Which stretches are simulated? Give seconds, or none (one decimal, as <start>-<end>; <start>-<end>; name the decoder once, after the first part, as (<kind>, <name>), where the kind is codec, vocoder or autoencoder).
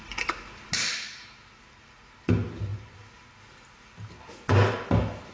none